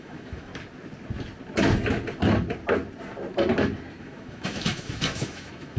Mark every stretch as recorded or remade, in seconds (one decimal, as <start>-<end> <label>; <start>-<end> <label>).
0.0-0.5 remade; 0.5-4.0 recorded; 4.0-5.8 remade